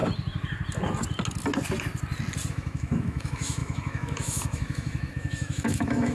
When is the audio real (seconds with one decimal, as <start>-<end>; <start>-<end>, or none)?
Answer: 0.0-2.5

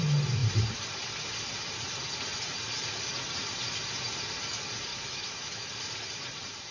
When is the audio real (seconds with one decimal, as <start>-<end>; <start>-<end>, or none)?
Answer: 0.0-4.9; 5.7-6.7

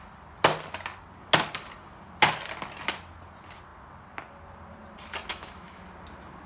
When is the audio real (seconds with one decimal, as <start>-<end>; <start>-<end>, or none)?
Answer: 0.0-5.3; 5.8-6.5

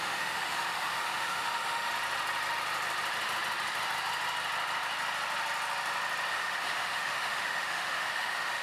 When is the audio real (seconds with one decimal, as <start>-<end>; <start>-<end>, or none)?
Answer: 1.9-6.3